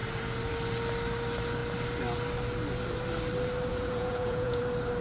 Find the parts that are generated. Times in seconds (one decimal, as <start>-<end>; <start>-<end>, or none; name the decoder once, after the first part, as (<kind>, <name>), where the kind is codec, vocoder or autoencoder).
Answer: 3.7-4.6 (vocoder, Vocos)

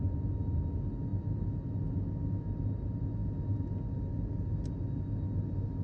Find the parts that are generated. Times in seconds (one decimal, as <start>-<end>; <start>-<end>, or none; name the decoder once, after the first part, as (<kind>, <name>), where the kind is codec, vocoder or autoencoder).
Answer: none

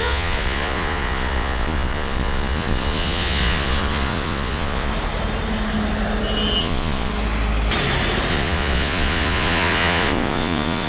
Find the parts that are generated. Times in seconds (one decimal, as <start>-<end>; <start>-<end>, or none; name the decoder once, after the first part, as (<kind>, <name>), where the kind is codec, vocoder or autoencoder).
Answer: 0.0-4.9 (vocoder, Vocos); 6.6-7.1; 8.3-10.9

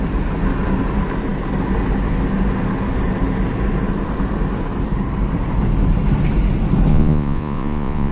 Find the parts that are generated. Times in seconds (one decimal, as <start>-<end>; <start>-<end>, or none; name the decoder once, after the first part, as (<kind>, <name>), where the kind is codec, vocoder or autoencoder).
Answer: 6.9-8.1 (vocoder, Vocos)

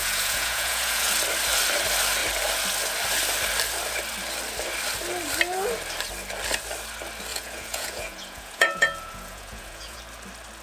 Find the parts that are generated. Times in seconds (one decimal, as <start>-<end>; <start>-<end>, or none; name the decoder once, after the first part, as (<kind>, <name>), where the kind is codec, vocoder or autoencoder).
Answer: 0.0-1.1 (vocoder, Vocos); 7.3-10.0